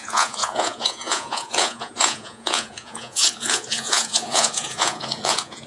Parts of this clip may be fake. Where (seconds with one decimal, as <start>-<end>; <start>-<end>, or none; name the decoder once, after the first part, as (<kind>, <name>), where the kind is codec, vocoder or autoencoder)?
0.0-5.7 (vocoder, Vocos)